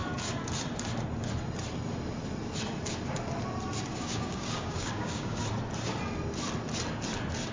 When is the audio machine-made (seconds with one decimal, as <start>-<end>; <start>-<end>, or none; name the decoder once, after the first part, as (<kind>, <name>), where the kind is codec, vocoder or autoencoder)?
3.9-5.4 (codec, DAC)